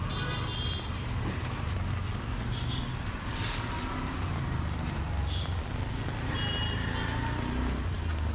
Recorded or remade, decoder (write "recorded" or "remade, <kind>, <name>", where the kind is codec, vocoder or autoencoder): recorded